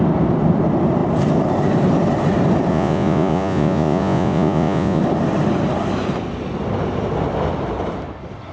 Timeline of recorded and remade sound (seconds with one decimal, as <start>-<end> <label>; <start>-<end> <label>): 0.0-2.7 recorded; 2.7-5.0 remade; 5.0-8.5 recorded